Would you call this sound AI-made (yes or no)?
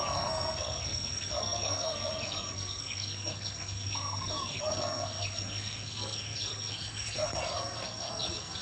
yes